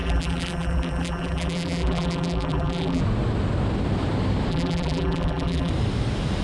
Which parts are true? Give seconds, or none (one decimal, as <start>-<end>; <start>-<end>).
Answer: 3.0-4.5; 5.7-6.4